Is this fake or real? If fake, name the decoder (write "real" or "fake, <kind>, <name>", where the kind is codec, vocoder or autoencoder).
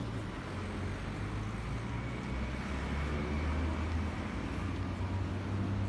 real